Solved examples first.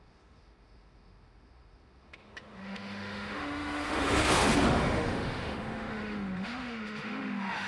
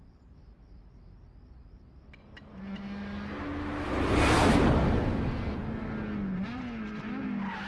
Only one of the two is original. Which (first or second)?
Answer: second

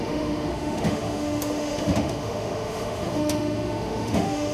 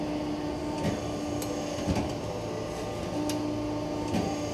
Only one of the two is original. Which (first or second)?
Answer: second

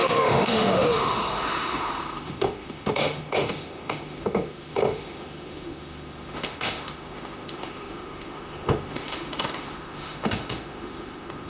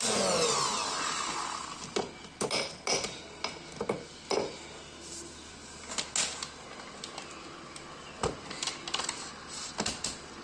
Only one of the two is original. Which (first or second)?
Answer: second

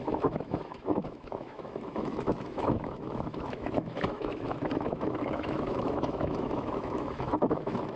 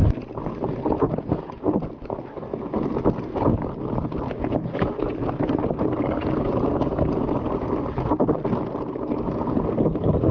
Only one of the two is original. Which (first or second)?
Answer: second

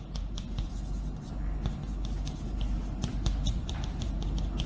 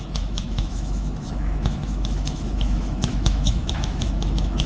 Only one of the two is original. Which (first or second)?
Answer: first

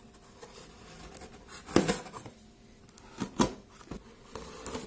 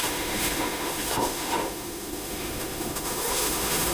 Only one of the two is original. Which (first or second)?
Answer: first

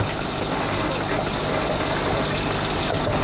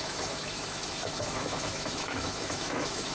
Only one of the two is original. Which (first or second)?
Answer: first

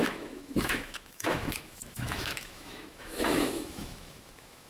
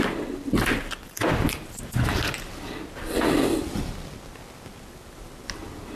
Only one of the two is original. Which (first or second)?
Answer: second